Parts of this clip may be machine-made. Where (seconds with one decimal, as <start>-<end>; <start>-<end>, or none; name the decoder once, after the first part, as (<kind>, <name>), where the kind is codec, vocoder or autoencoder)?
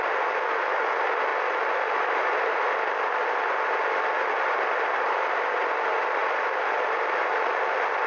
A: 1.3-5.7 (vocoder, BigVGAN v2); 6.2-7.2